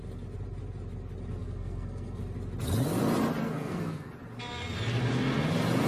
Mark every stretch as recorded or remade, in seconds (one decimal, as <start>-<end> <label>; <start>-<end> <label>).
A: 0.0-1.4 recorded; 1.4-2.2 remade; 2.2-3.4 recorded; 3.4-4.1 remade; 4.1-5.9 recorded